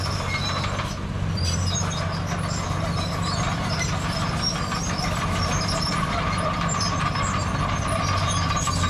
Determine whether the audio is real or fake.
fake